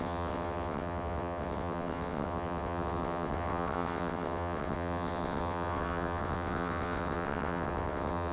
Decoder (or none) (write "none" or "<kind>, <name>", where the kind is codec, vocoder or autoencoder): vocoder, WaveNeXt